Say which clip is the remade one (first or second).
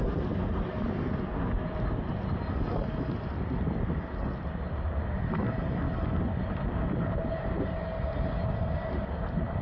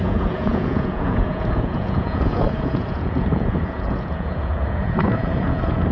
second